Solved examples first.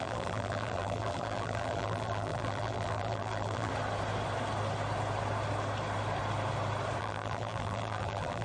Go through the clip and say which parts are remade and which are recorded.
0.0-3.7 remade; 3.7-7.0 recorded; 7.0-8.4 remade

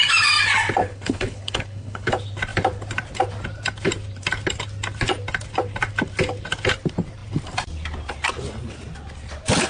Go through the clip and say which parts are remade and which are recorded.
0.0-0.8 recorded; 0.8-2.1 remade; 2.1-9.7 recorded

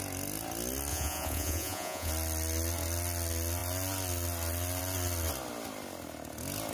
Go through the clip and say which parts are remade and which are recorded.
0.0-0.9 recorded; 0.9-2.1 remade; 2.1-6.7 recorded